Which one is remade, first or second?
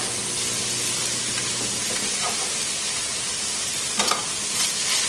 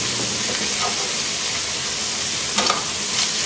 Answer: second